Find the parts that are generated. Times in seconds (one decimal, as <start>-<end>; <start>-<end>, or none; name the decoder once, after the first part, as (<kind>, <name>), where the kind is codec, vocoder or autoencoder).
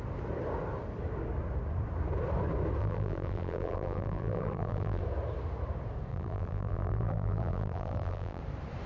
2.8-5.0 (vocoder, BigVGAN v2); 6.1-8.4